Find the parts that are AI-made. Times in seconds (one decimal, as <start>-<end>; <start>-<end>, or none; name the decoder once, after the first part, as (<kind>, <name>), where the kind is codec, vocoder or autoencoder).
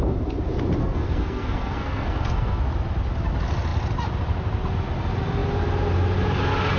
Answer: 0.8-2.6 (codec, SNAC)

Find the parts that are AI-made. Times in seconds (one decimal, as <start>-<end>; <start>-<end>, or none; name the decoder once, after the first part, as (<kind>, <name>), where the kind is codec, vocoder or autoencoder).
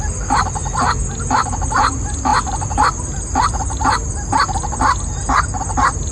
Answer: none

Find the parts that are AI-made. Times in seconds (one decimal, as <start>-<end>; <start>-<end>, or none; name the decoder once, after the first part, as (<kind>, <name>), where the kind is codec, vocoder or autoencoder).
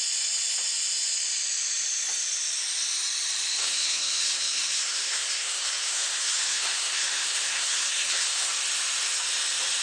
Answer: 3.6-8.5 (codec, SNAC)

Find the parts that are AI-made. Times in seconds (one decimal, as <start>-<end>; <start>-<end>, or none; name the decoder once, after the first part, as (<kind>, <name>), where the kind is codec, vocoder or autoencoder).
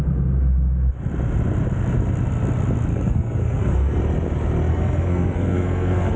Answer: 2.9-4.0 (codec, SNAC); 4.7-6.2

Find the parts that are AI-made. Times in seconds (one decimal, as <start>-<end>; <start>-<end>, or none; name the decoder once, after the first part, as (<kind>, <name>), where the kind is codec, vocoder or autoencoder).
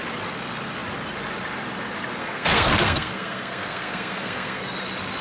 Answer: 2.2-4.6 (codec, SNAC)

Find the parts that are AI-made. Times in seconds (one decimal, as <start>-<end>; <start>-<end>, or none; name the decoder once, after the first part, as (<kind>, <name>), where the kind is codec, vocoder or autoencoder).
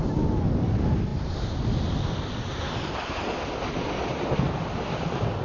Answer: none